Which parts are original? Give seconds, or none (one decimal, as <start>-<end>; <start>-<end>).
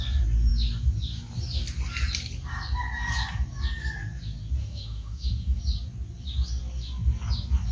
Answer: 0.0-4.6; 5.6-7.7